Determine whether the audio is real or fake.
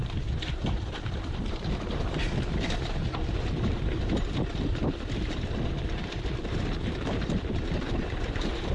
fake